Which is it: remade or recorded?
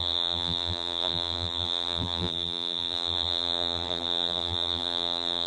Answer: remade